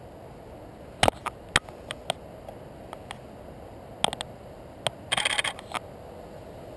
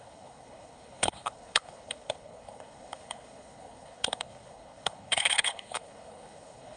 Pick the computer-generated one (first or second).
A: second